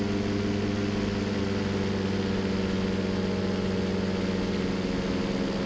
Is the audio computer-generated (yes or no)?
no